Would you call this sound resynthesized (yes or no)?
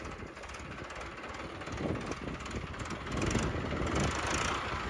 no